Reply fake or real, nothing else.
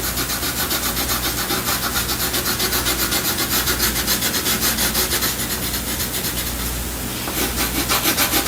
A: real